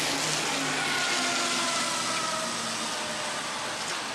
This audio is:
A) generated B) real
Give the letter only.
B